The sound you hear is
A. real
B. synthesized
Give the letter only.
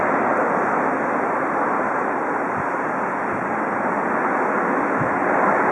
A